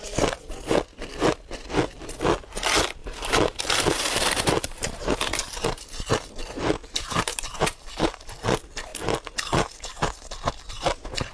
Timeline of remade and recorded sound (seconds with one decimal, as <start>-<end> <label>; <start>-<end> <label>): 0.0-3.0 recorded; 3.0-6.1 remade; 6.1-6.8 recorded; 6.8-7.8 remade; 7.8-11.3 recorded